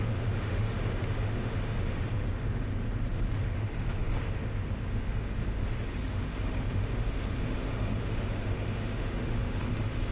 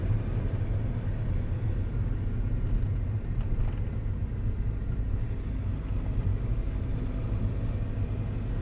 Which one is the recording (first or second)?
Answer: second